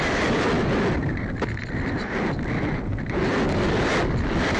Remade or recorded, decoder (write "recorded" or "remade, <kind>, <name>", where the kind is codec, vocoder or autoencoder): recorded